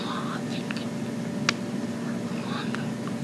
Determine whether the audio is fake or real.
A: real